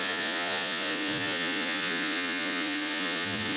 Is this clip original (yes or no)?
no